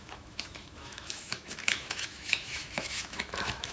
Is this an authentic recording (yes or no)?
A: no